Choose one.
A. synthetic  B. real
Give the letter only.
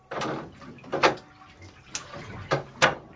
B